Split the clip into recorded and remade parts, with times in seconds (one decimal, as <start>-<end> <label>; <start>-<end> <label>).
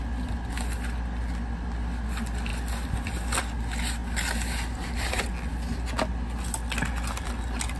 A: 0.0-7.8 recorded